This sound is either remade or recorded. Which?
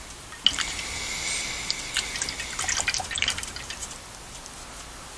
recorded